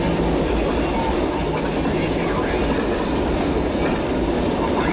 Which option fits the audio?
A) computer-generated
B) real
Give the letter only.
B